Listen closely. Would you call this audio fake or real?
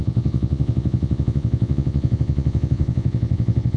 fake